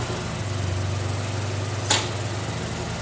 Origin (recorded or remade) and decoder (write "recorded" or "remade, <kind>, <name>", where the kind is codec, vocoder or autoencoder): recorded